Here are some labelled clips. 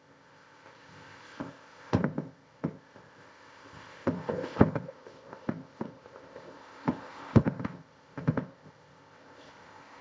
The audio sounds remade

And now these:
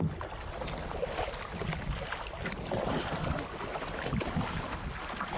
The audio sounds recorded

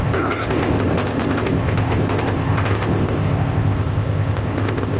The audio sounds remade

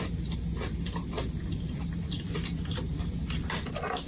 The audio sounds recorded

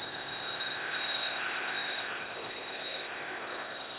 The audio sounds remade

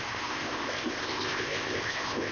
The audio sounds remade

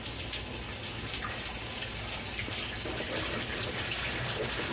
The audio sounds recorded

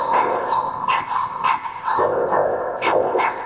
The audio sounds remade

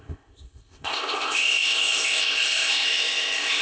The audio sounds remade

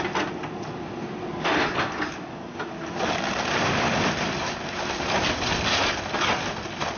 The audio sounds recorded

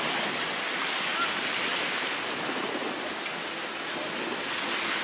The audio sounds recorded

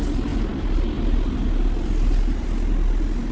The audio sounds recorded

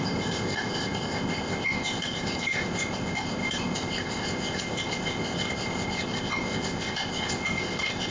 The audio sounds remade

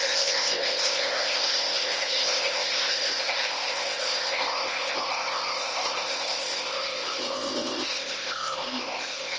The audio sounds remade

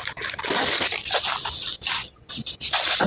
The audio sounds recorded